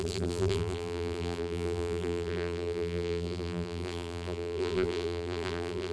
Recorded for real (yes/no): no